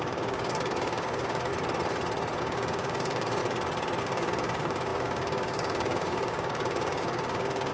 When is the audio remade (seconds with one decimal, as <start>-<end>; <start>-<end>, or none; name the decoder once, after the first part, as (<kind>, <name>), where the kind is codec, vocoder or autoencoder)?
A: 0.0-1.5 (codec, DAC); 2.4-3.4; 4.0-7.7